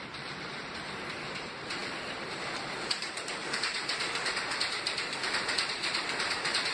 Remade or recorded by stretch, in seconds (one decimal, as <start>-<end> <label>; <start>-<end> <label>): 0.0-6.7 remade